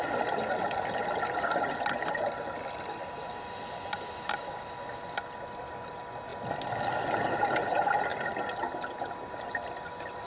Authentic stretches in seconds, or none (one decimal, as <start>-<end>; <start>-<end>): 0.0-10.3